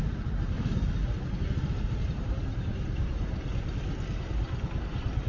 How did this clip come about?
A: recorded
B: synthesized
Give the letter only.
A